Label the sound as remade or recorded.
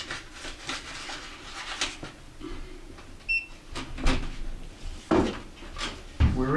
recorded